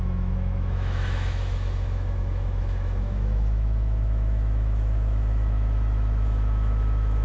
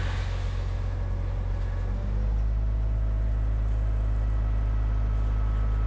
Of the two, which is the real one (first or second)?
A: second